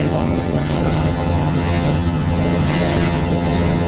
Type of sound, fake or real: fake